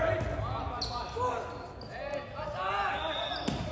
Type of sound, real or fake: real